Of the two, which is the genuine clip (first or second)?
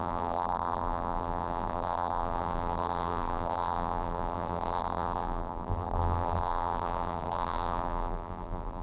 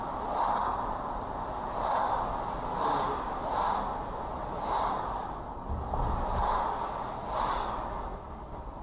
second